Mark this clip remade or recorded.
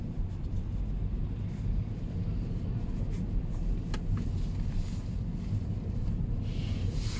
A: recorded